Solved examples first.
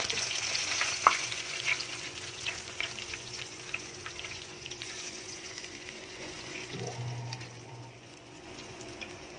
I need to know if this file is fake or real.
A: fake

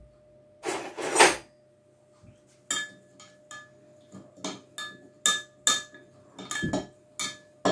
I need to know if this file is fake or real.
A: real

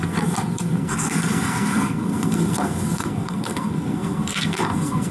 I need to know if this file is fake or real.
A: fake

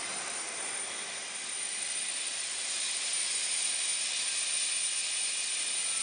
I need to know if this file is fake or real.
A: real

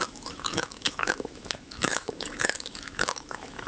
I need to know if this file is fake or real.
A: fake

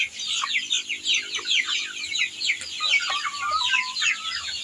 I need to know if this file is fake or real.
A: real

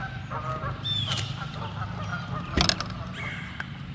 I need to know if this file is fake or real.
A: real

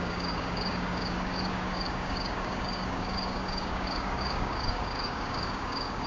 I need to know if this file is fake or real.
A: fake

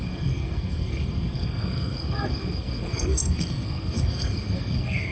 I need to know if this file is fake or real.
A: fake